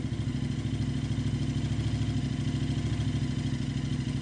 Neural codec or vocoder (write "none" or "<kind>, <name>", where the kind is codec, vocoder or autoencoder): none